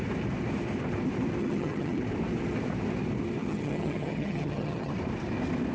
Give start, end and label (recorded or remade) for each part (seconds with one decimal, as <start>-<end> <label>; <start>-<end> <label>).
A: 0.0-1.4 recorded; 1.4-2.0 remade; 2.0-3.4 recorded; 3.4-4.9 remade; 4.9-5.7 recorded